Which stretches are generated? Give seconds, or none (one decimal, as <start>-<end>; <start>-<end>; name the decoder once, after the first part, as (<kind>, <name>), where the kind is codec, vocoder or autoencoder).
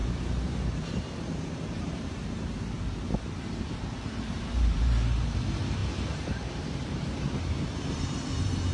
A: 0.0-8.7 (vocoder, BigVGAN v2)